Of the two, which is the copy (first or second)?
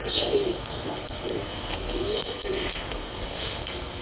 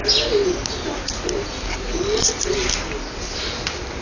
first